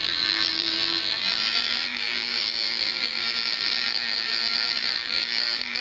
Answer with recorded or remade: remade